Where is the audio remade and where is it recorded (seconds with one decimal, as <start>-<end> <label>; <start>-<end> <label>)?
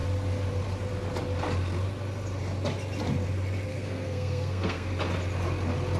0.0-3.7 recorded; 3.7-4.9 remade; 4.9-6.0 recorded